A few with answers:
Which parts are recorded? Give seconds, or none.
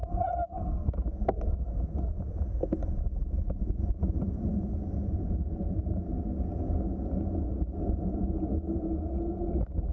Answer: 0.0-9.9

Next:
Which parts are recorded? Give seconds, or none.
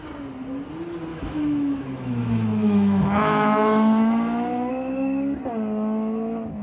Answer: 0.0-1.1; 4.7-6.6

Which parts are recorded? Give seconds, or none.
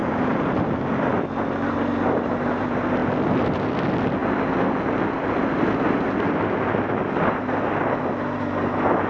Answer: 0.0-9.1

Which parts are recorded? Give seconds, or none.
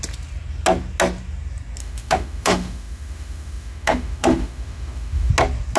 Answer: 0.0-1.8; 5.3-5.8